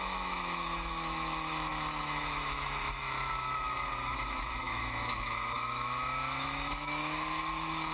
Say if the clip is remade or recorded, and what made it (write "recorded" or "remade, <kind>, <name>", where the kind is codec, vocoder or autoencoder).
remade, autoencoder, DAC-VAE